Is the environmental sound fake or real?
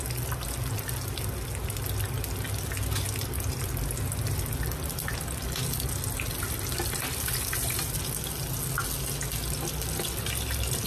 real